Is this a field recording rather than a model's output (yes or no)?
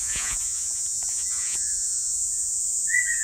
no